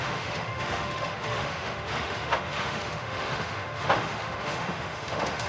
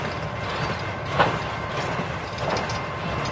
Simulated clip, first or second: first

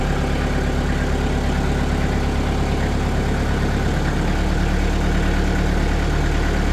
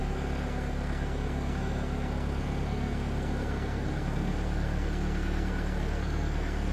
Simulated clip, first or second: second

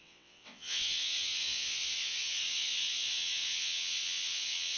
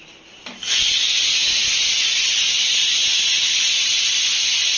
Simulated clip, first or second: first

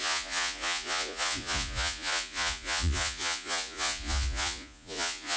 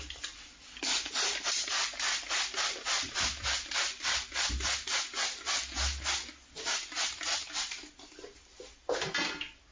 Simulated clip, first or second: first